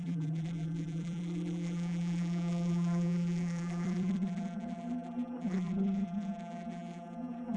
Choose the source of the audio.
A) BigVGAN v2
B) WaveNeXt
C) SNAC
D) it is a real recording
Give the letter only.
A